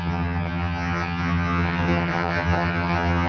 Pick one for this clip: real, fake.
fake